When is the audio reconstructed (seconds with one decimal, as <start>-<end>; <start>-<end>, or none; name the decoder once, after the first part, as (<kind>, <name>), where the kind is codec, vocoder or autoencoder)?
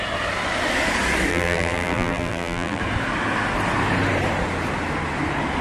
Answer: 1.3-2.8 (vocoder, BigVGAN v2)